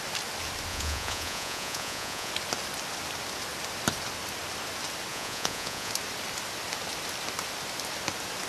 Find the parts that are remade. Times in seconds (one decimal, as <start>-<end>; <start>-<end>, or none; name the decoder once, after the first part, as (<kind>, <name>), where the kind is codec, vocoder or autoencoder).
0.7-2.3 (vocoder, Vocos); 5.1-5.9

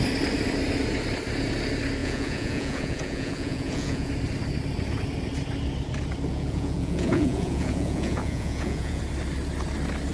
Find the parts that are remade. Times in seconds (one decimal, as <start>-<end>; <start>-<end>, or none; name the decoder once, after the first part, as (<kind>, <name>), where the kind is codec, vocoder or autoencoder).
2.0-4.1 (vocoder, Vocos); 6.3-9.0

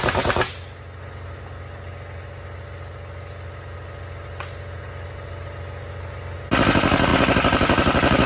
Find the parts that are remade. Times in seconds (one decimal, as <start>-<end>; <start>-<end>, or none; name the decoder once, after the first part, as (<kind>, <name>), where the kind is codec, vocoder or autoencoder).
none

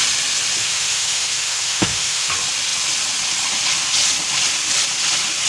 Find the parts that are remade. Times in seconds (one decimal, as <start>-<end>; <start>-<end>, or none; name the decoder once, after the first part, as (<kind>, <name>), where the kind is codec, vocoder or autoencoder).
0.6-2.3 (autoencoder, DAC-VAE)

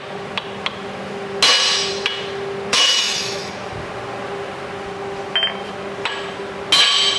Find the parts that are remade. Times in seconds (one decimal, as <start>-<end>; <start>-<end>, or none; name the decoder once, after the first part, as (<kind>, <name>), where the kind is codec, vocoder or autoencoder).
2.7-3.5 (autoencoder, DAC-VAE)

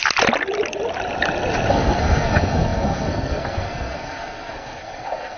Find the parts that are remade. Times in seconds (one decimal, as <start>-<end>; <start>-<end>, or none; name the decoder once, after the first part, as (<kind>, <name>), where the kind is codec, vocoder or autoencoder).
1.7-5.4 (codec, SNAC)